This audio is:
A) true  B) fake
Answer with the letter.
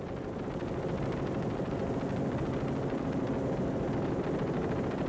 A